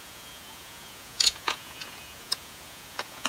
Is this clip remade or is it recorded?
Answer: remade